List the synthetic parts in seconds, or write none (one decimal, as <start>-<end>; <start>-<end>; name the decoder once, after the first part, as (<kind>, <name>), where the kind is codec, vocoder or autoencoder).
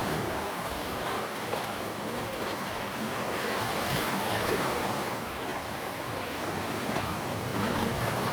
0.0-8.3 (codec, DAC)